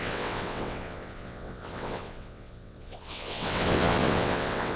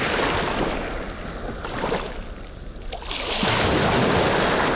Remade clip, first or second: first